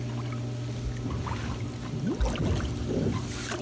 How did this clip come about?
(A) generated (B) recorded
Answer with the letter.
B